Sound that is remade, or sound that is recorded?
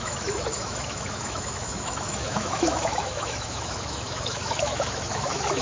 remade